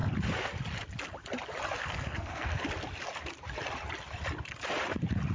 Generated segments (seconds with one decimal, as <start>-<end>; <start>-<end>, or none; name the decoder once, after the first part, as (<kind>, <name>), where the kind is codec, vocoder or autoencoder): 1.8-2.6 (codec, SNAC)

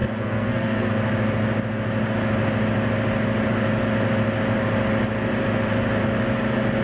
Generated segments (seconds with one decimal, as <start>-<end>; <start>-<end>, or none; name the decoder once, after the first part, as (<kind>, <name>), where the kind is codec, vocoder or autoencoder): 0.0-0.9 (codec, SNAC)

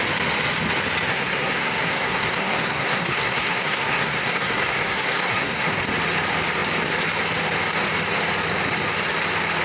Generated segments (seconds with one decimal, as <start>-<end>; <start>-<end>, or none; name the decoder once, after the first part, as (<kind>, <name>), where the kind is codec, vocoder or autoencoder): 1.1-5.8 (codec, SNAC)

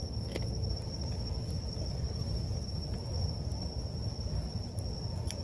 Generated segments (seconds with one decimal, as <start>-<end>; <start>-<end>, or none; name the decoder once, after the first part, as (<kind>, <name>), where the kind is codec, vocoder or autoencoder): none

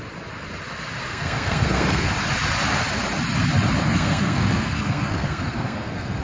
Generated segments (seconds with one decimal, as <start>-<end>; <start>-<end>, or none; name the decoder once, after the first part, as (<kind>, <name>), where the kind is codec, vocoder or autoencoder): 1.1-2.1 (codec, SNAC); 3.9-6.2

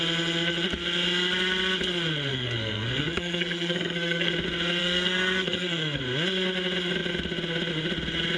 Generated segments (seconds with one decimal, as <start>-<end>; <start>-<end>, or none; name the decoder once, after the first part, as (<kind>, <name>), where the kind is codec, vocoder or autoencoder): 2.3-4.3 (codec, SNAC); 4.8-6.0

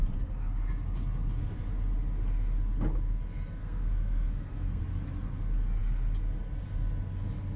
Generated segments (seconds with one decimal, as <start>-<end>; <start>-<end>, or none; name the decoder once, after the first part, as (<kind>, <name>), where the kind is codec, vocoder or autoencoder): 3.6-4.8 (codec, SNAC)

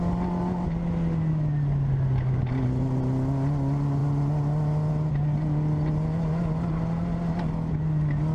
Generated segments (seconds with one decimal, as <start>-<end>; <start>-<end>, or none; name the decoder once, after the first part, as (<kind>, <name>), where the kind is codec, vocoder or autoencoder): none